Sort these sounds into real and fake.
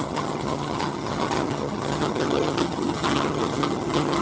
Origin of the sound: fake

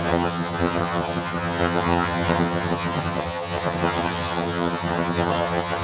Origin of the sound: fake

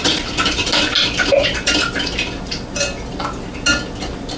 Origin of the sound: real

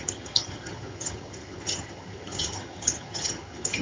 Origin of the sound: fake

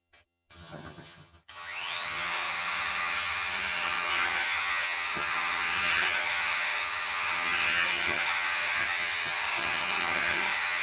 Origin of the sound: fake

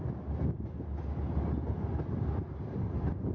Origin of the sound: real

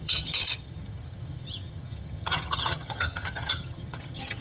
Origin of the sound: fake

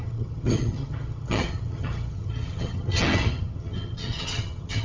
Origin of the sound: fake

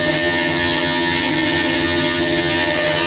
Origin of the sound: fake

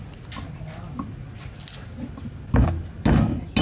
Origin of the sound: real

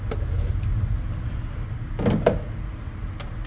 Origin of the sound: real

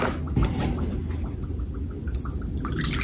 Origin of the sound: real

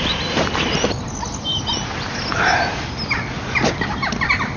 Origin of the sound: real